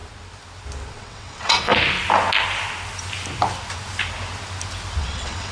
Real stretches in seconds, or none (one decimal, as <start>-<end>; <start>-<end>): 0.0-1.0; 1.7-5.0